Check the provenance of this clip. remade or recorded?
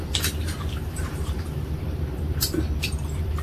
remade